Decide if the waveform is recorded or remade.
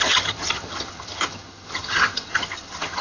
remade